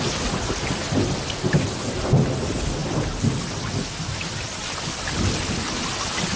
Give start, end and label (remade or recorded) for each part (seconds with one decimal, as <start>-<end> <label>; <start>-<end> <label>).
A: 0.0-6.4 recorded